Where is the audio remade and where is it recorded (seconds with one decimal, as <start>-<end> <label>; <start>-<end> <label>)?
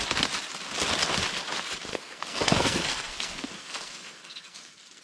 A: 0.0-1.9 recorded; 1.9-5.0 remade